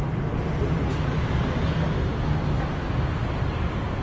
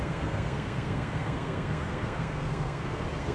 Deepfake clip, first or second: second